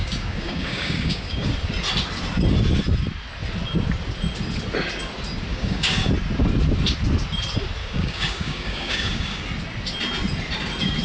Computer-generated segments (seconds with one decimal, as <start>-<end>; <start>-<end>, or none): 0.0-1.5; 5.5-6.1; 7.8-9.4